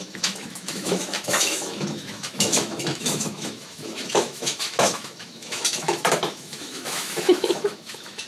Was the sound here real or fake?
fake